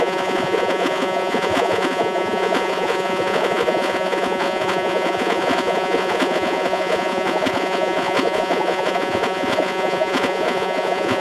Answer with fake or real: fake